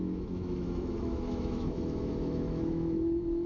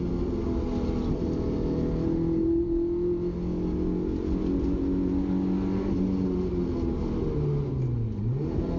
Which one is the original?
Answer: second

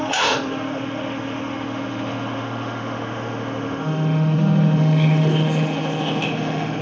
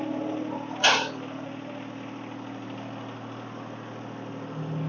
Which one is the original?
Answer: second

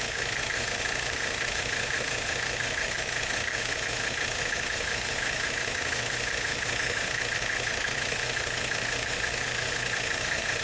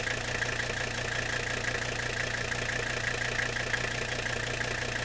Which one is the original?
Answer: second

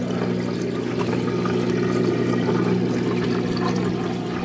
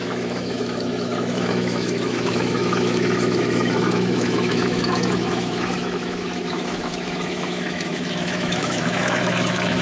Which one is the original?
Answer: first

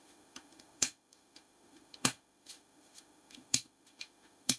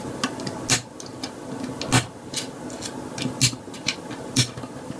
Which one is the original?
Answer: second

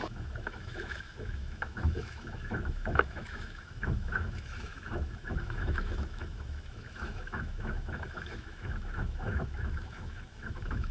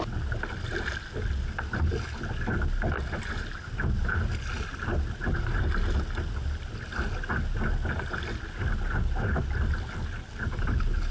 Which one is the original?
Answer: second